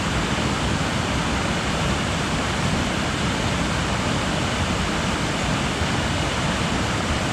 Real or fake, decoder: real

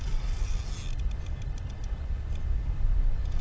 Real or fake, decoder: real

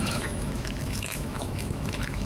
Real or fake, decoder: fake, autoencoder, DAC-VAE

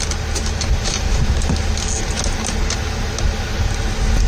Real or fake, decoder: real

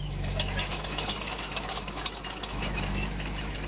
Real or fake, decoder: fake, autoencoder, DAC-VAE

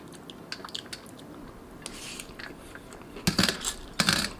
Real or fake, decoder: real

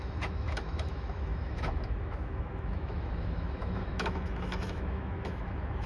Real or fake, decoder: fake, autoencoder, DAC-VAE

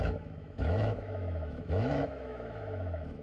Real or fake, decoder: fake, autoencoder, DAC-VAE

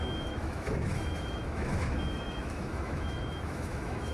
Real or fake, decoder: fake, autoencoder, DAC-VAE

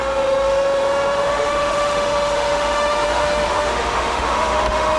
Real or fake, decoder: fake, autoencoder, DAC-VAE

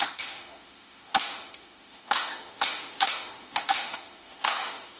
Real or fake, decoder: fake, autoencoder, DAC-VAE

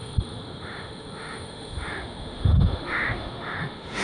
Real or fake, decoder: fake, autoencoder, DAC-VAE